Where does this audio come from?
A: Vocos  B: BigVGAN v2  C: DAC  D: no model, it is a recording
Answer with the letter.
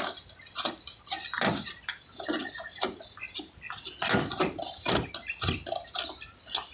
D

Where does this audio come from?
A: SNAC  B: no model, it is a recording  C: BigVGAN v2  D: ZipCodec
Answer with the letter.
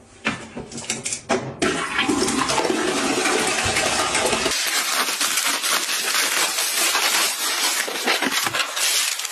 B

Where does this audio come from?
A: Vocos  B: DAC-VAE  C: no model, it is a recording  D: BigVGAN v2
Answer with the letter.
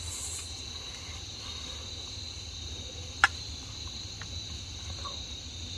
C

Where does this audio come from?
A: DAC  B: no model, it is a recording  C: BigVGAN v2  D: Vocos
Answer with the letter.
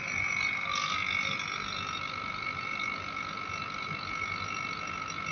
B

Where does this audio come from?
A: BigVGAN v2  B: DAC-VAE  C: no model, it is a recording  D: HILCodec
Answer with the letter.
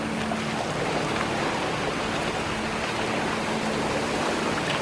A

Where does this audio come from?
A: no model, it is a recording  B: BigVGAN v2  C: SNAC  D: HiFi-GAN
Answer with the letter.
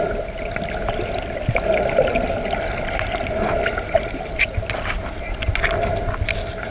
A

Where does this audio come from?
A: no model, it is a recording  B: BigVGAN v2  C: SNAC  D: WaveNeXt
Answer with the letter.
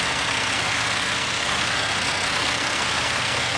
C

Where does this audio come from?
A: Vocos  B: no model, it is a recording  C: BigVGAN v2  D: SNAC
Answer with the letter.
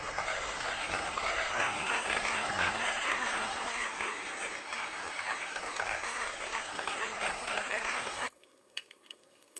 D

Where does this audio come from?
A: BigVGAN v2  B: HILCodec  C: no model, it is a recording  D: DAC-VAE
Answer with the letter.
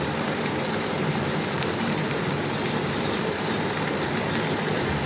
A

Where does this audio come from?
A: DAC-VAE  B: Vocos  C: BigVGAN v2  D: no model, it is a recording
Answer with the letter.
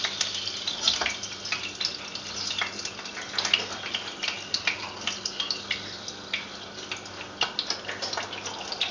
D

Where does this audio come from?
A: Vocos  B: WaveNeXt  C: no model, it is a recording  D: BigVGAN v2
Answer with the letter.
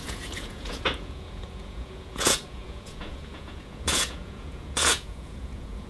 A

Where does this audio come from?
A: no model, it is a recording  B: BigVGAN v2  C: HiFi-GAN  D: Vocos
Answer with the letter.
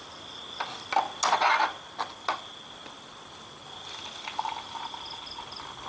A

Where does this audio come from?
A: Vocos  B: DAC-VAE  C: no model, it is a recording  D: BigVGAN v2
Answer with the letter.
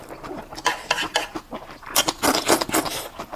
C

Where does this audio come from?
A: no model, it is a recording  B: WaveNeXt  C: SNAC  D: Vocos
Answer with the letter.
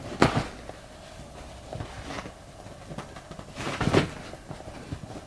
A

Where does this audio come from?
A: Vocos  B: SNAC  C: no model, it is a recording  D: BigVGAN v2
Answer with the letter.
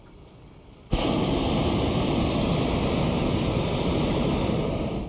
C